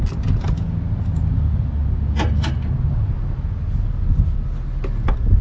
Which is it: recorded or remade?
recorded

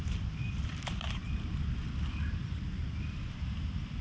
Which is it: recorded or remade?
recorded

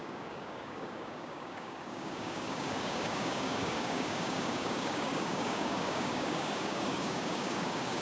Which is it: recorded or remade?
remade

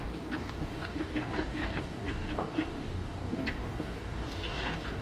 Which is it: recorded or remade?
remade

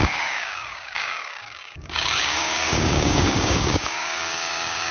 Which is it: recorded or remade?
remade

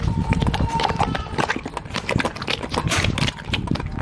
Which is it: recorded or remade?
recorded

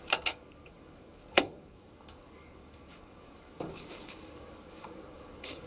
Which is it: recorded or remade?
remade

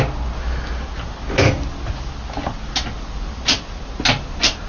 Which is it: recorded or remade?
recorded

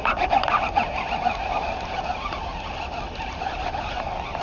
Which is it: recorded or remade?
recorded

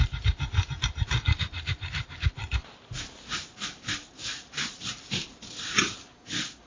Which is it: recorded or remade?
recorded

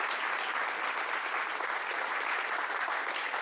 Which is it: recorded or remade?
recorded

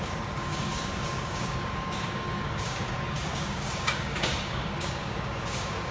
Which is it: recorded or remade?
remade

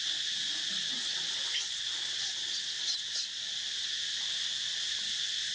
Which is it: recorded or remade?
recorded